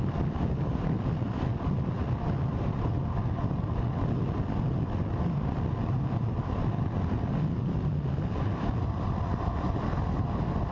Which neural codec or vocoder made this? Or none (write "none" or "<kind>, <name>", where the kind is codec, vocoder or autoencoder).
none